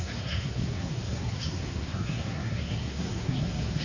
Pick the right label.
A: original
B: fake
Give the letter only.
B